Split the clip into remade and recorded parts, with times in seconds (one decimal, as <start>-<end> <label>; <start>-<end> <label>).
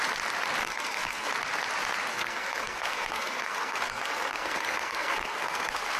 0.0-0.6 recorded; 0.6-1.3 remade; 1.3-2.1 recorded; 2.1-6.0 remade